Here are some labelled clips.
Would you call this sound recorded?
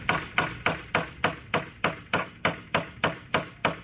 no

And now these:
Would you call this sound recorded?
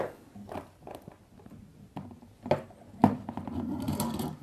yes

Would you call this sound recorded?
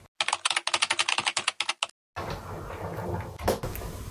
yes